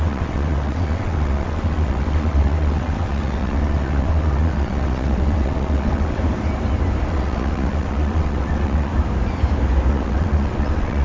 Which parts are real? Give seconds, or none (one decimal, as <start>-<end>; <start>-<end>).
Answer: 6.2-7.1; 8.9-9.9